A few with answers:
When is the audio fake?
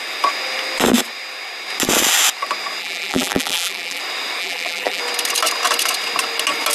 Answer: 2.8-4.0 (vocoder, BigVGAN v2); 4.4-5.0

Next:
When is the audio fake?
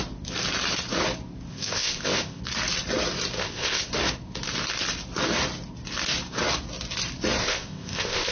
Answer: 1.5-2.4 (codec, ZipCodec); 3.4-3.9; 7.4-8.3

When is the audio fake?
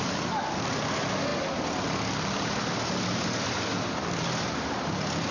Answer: none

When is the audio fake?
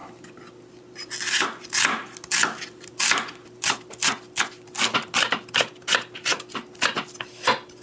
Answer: none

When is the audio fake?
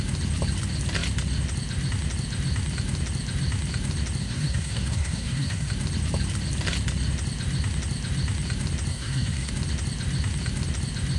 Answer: 4.2-5.7 (codec, SNAC); 8.9-9.5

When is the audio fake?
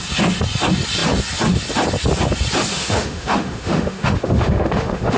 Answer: 2.7-5.2 (autoencoder, DAC-VAE)